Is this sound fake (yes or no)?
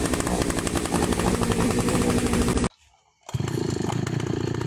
yes